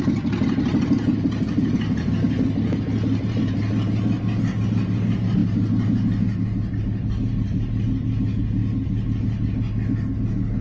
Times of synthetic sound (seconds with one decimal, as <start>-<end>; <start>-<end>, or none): none